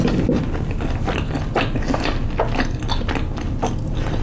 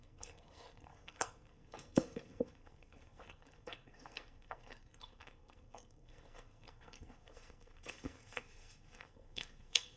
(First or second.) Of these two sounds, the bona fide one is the first